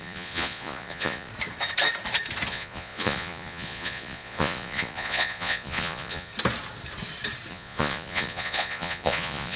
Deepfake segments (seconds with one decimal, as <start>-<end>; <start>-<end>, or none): 0.0-1.3; 2.5-6.3; 7.5-9.6